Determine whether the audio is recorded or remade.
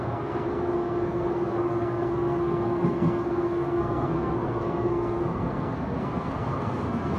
remade